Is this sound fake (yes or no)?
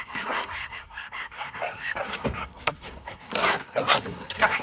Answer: yes